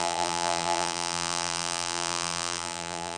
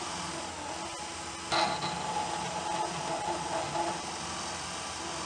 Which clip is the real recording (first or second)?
second